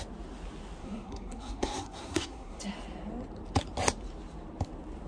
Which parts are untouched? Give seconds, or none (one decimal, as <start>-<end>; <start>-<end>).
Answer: 0.0-0.8; 2.6-5.1